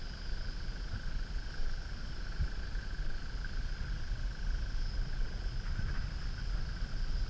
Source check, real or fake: real